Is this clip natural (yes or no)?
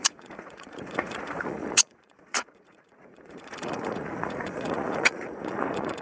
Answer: no